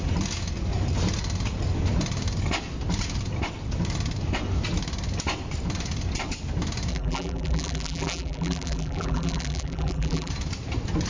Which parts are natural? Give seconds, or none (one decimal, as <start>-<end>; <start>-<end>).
0.0-6.9; 10.3-11.1

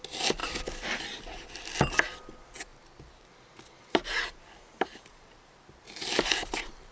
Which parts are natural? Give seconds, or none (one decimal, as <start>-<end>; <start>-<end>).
0.0-2.7